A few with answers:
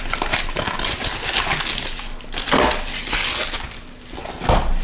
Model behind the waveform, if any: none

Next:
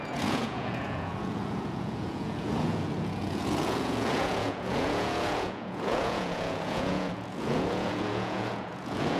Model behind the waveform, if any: vocoder, Vocos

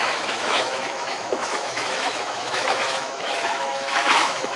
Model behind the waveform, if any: autoencoder, DAC-VAE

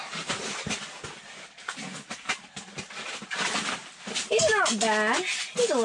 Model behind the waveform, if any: none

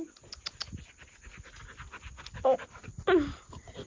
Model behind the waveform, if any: none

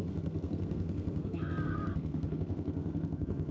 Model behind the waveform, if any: codec, SNAC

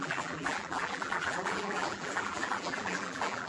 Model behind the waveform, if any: vocoder, BigVGAN v2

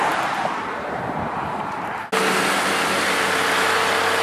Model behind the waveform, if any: none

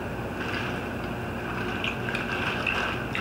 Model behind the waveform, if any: none